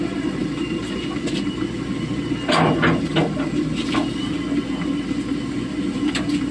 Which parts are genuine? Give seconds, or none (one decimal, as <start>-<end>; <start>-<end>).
0.0-6.5